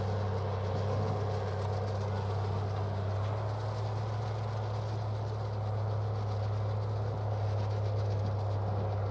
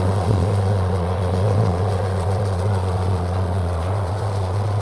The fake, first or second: second